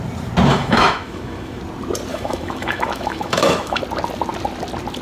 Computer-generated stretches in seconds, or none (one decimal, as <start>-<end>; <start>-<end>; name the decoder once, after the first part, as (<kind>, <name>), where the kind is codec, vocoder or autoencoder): 0.5-1.6 (autoencoder, DAC-VAE); 2.1-3.8